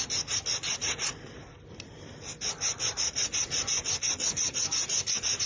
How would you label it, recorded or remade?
recorded